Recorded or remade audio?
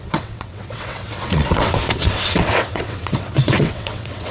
remade